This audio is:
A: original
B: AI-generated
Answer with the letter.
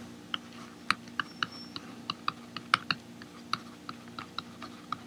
A